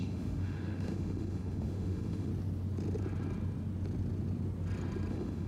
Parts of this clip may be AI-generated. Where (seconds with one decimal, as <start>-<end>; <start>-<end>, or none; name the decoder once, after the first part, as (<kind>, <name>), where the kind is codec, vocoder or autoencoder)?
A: 0.0-2.3 (autoencoder, DAC-VAE); 5.1-5.5